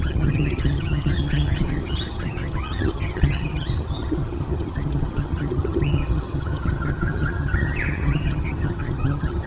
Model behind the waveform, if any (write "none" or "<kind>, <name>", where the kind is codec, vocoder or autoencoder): vocoder, HiFi-GAN